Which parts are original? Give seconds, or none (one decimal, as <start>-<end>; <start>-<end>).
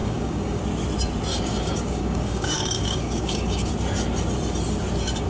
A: 0.6-1.3; 3.7-5.3